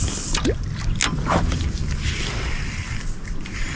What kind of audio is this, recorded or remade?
recorded